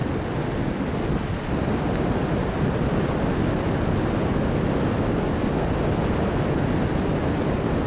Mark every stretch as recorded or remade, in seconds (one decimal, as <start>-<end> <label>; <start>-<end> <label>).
0.0-7.9 recorded

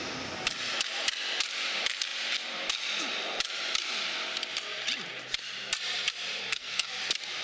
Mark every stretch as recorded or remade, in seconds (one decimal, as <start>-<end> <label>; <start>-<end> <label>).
0.0-6.4 recorded; 6.4-7.0 remade; 7.0-7.4 recorded

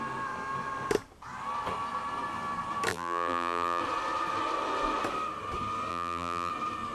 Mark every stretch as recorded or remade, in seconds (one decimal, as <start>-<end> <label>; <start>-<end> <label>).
0.0-2.9 recorded; 2.9-3.8 remade; 3.8-5.9 recorded; 5.9-6.5 remade; 6.5-6.9 recorded

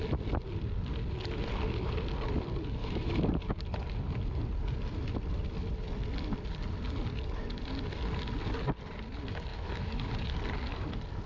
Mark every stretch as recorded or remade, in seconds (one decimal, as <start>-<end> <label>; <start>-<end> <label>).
0.0-2.8 recorded; 2.8-3.3 remade; 3.3-9.5 recorded; 9.5-10.1 remade; 10.1-11.3 recorded